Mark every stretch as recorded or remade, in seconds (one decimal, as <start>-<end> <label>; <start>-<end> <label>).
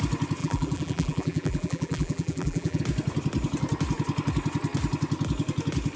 0.0-0.4 recorded; 0.4-2.8 remade; 2.8-6.0 recorded